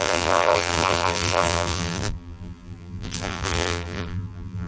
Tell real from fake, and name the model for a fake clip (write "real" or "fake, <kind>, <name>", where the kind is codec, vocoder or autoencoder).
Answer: fake, vocoder, BigVGAN v2